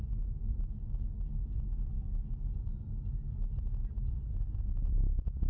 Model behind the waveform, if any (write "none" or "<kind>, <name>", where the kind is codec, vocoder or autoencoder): none